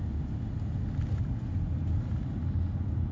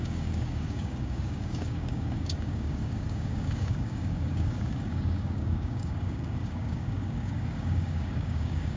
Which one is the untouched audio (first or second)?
first